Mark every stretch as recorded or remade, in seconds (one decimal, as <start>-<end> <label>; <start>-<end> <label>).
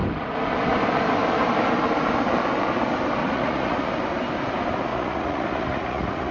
0.0-3.2 recorded; 3.2-3.9 remade; 3.9-4.9 recorded; 4.9-6.3 remade